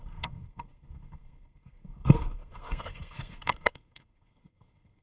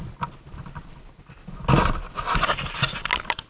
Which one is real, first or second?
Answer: second